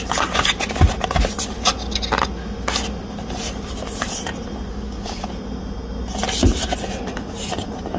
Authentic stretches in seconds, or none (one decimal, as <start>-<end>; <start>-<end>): 0.0-4.7; 5.3-8.0